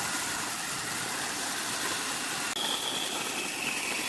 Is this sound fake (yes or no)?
no